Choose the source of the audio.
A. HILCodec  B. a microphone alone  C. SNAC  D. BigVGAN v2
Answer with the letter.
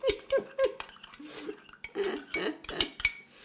B